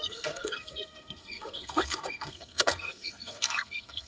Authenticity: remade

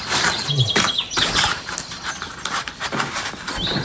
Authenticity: recorded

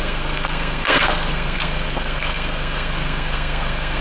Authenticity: remade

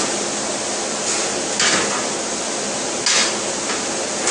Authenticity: recorded